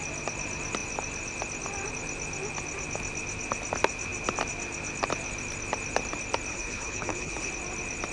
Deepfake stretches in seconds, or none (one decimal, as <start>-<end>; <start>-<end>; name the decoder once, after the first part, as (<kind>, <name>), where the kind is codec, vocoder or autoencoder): 6.5-7.5 (codec, HILCodec)